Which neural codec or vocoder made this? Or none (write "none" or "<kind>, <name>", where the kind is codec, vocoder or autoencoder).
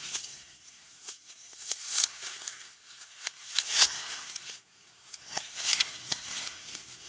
codec, SNAC